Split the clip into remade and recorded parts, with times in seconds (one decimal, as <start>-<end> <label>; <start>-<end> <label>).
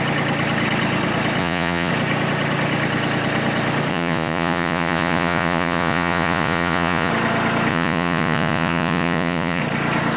0.0-1.4 recorded; 1.4-1.9 remade; 1.9-3.9 recorded; 3.9-7.1 remade; 7.1-7.7 recorded; 7.7-9.6 remade; 9.6-10.2 recorded